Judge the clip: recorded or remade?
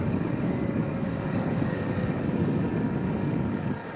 remade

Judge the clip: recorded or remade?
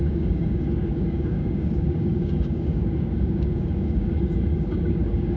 remade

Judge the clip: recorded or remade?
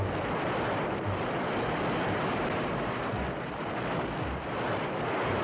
recorded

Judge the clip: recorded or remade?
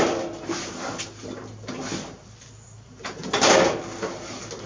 recorded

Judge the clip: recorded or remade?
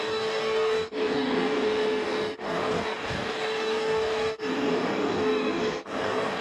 remade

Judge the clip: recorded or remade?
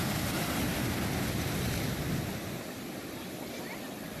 recorded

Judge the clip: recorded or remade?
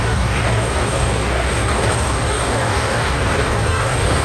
remade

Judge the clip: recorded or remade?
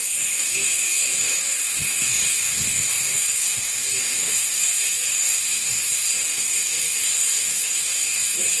remade